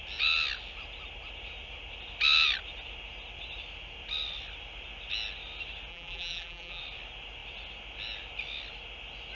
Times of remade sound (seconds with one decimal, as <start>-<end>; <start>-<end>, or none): 5.9-6.8